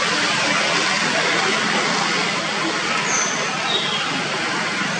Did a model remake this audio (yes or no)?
no